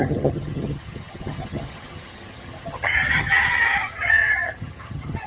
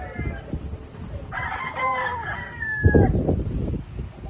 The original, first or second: second